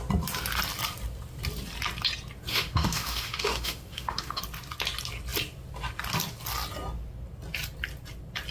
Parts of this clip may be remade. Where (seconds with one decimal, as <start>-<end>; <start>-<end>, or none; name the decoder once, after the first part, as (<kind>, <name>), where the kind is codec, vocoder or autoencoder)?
2.5-4.4 (autoencoder, DAC-VAE)

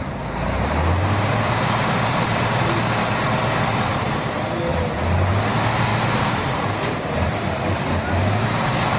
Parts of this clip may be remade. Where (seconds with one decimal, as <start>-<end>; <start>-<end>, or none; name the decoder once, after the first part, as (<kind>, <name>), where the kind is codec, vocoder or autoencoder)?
4.7-5.3 (vocoder, BigVGAN v2); 5.9-7.3

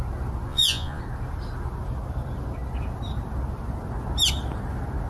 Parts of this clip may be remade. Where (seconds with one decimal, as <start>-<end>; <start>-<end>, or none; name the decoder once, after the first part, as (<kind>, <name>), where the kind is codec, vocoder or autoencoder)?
0.5-1.0 (vocoder, Vocos)

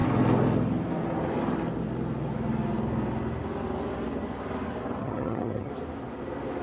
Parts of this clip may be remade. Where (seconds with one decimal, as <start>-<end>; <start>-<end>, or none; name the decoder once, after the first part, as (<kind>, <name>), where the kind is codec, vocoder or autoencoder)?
5.0-5.7 (vocoder, HiFi-GAN)

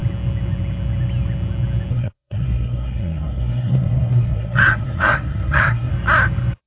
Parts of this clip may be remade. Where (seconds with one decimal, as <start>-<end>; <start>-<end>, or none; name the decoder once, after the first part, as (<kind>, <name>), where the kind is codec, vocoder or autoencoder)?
1.9-5.9 (codec, SNAC)

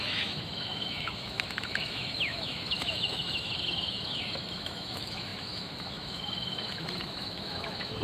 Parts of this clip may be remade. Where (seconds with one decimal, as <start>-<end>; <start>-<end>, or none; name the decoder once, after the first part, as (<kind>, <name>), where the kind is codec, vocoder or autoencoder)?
0.0-8.0 (autoencoder, DAC-VAE)

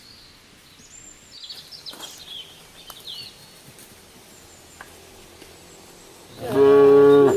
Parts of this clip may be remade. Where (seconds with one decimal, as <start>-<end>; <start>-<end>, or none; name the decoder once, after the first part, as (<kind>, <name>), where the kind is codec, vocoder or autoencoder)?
none